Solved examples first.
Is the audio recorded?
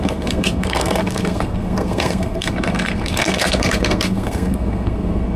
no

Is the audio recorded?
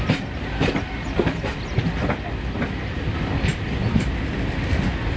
yes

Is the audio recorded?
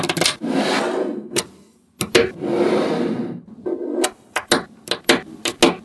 yes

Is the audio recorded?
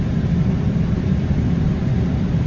yes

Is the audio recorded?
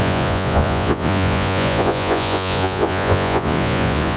no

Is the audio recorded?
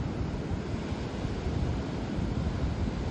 yes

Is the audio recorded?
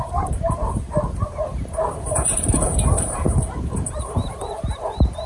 no